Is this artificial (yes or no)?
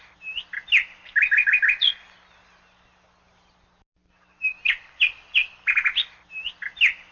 no